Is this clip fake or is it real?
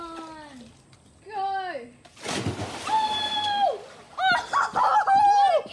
real